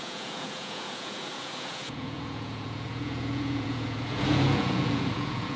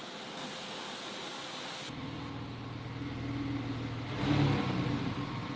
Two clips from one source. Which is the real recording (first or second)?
second